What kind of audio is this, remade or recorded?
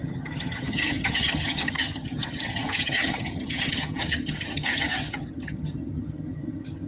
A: remade